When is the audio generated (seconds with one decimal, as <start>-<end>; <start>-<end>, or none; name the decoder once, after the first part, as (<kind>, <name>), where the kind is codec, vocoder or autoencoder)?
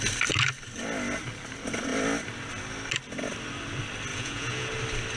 4.1-4.7 (vocoder, Vocos)